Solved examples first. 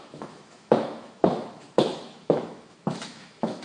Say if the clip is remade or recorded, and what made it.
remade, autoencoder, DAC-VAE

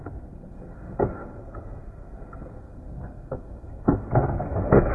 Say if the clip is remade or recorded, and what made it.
remade, codec, SNAC